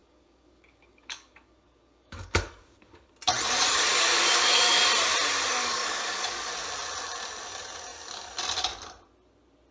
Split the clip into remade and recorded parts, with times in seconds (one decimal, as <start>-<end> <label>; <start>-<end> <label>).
0.0-3.1 remade; 3.1-3.9 recorded; 3.9-4.8 remade; 4.8-5.6 recorded; 5.6-6.5 remade; 6.5-9.7 recorded